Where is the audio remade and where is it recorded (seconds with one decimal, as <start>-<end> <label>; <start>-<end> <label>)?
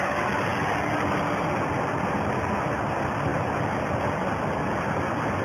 0.0-5.4 recorded